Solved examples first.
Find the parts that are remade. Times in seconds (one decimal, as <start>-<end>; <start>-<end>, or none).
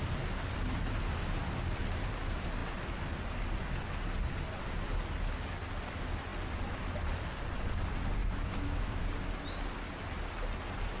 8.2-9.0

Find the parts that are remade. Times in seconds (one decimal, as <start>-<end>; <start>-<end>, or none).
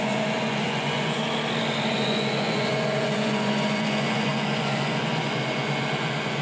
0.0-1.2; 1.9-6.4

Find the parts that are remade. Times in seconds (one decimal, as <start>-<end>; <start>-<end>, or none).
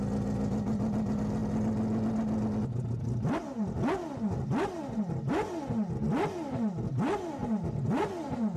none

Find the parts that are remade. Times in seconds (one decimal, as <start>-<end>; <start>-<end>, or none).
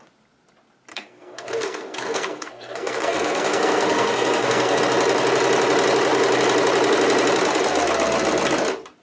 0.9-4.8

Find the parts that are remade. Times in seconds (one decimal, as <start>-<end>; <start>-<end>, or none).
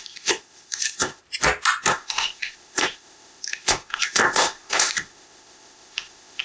0.0-1.2; 1.9-6.4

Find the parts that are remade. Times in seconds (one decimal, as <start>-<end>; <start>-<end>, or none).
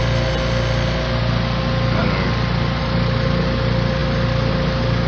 none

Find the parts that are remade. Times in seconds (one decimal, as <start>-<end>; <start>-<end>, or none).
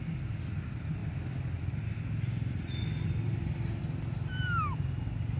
none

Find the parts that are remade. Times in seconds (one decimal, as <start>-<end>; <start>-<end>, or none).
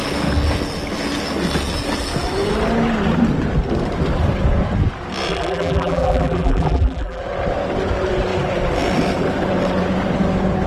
5.3-7.2